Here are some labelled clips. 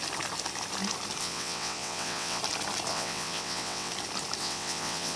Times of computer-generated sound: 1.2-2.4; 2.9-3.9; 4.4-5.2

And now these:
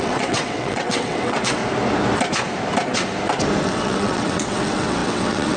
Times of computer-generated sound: 0.0-1.6; 3.6-5.6

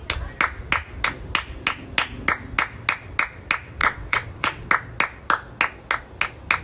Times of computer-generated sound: 3.8-4.7

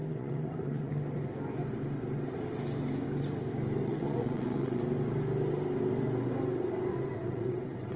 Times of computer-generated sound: 0.0-0.9; 3.8-4.8; 6.9-8.0

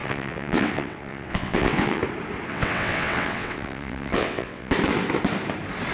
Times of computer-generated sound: 0.0-2.0; 2.5-4.7